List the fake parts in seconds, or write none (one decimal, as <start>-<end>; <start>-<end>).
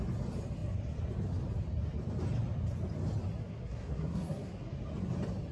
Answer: 3.4-4.7